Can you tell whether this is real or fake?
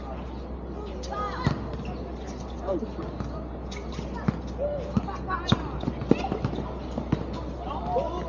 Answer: real